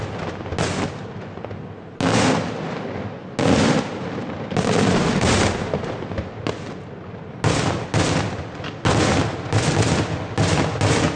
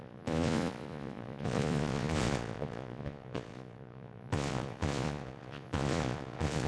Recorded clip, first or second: first